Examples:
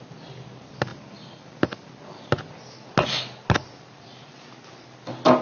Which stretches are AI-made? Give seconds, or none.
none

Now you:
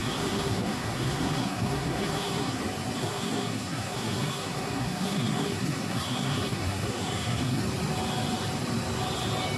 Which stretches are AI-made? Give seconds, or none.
0.0-2.6 (codec, SNAC); 3.0-7.6

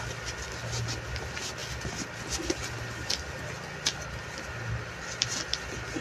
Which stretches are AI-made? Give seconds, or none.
none

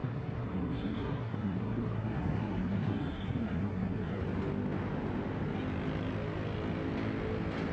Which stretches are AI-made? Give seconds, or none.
0.0-4.2 (codec, SNAC)

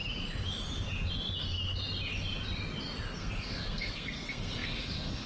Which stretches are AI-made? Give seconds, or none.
3.2-5.3 (codec, SNAC)

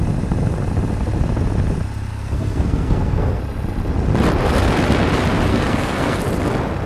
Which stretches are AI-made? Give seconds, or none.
2.1-3.4 (codec, SNAC); 5.5-6.2